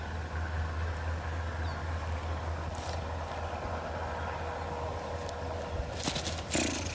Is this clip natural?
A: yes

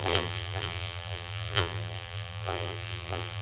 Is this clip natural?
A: no